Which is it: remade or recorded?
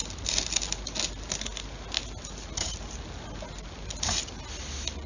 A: recorded